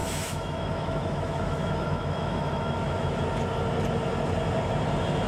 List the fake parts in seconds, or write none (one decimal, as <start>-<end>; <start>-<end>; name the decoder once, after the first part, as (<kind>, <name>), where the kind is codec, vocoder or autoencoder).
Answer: 0.0-3.2 (autoencoder, DAC-VAE)